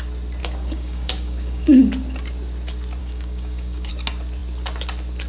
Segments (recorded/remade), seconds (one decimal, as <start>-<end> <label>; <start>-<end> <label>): 0.0-0.4 recorded; 0.4-1.8 remade; 1.8-3.0 recorded; 3.0-3.9 remade; 3.9-5.3 recorded